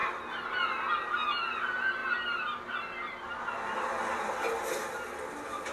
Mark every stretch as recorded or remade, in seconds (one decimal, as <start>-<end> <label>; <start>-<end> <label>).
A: 0.0-5.7 recorded